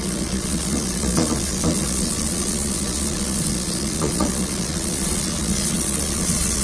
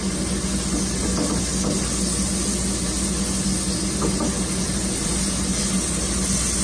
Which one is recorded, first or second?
second